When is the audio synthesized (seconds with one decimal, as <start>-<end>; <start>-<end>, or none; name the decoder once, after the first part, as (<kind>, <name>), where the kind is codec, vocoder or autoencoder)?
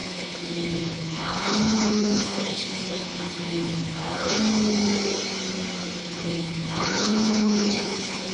0.0-4.4 (codec, HILCodec); 6.0-8.3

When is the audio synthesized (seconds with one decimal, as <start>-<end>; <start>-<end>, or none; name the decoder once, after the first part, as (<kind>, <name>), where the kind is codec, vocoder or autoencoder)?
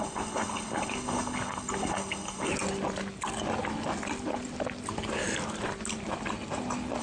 0.0-2.5 (codec, HILCodec)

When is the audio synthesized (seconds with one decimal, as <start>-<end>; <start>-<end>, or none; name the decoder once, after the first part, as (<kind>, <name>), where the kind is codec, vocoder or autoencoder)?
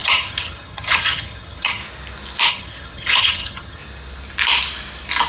0.0-1.8 (vocoder, HiFi-GAN); 2.5-3.8